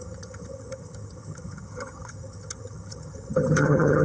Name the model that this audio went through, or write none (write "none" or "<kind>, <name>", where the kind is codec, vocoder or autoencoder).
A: vocoder, HiFi-GAN